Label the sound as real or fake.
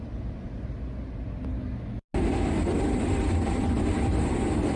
real